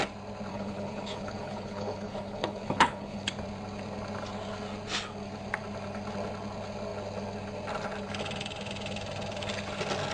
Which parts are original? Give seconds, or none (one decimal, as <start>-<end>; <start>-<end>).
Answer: 0.0-0.5; 3.3-10.1